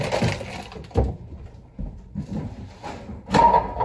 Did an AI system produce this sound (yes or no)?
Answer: no